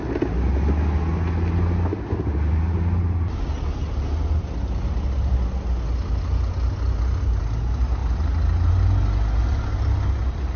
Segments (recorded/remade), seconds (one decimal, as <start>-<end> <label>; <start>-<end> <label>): 0.0-10.6 recorded